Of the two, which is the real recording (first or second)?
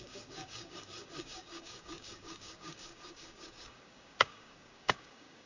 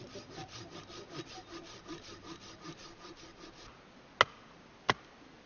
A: second